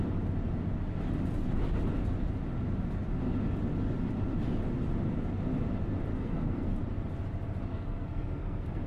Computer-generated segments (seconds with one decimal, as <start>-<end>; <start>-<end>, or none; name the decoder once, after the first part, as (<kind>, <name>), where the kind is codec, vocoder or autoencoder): 6.1-6.8 (codec, SNAC); 7.7-8.9